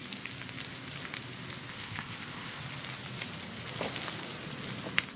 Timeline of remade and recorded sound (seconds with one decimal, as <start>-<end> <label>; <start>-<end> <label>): 0.0-1.7 recorded; 1.7-2.6 remade; 2.6-5.2 recorded